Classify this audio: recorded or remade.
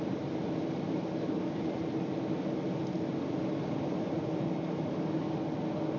recorded